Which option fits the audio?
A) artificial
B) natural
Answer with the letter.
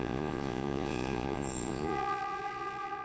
A